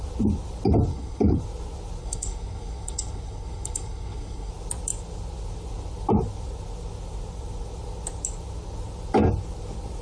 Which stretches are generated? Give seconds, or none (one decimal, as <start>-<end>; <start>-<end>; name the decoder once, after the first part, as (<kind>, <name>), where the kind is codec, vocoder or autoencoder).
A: 0.9-1.4 (codec, HILCodec); 2.0-4.5